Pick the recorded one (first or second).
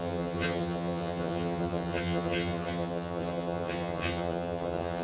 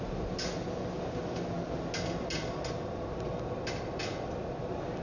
second